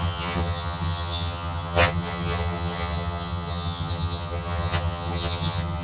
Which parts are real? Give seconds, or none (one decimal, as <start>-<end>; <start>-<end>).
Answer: none